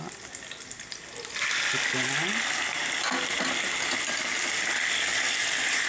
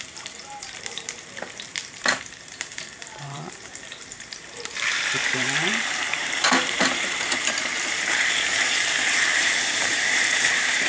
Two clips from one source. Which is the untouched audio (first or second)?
first